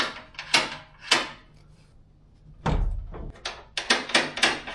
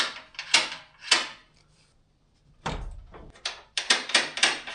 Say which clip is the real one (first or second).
first